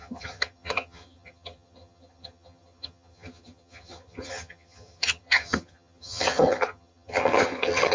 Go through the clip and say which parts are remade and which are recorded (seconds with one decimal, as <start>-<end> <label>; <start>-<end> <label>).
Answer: 0.0-7.9 remade